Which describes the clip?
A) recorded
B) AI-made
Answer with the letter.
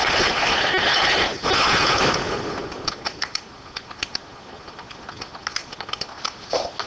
A